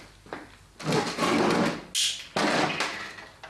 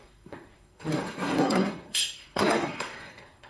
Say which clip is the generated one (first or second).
second